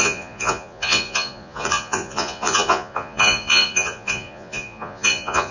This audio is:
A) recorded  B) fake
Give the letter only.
B